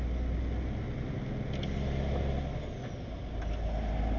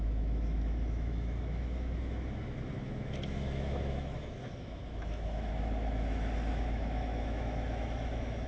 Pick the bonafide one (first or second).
first